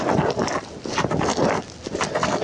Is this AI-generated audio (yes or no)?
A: no